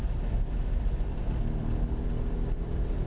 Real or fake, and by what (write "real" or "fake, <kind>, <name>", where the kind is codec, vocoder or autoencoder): real